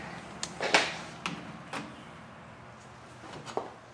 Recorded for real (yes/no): yes